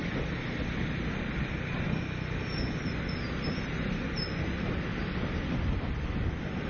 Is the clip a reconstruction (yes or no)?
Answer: no